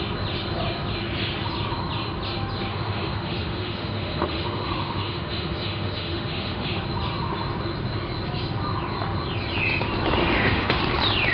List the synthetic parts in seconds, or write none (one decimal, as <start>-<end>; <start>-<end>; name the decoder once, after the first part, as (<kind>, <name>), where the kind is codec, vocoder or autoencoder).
2.7-6.8 (autoencoder, DAC-VAE); 10.2-10.8